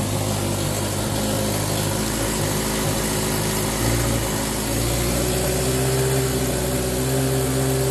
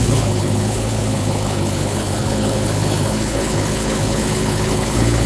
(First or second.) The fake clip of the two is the second